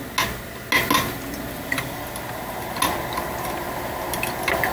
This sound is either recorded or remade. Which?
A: recorded